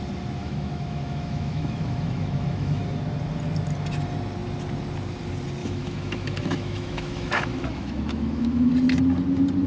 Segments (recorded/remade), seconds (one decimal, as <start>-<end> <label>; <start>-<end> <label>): 0.0-0.4 recorded; 0.4-2.8 remade; 2.8-5.6 recorded; 5.6-8.7 remade; 8.7-9.7 recorded